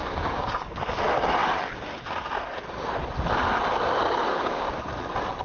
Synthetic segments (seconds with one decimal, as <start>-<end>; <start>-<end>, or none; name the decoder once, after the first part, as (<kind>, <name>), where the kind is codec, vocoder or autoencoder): 0.0-0.8 (codec, DAC); 4.3-4.8